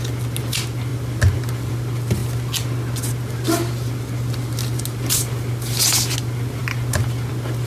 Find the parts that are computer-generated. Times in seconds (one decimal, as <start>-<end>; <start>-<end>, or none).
none